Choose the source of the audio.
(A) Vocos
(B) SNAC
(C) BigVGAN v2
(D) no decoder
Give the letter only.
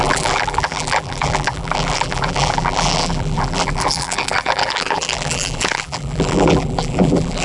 C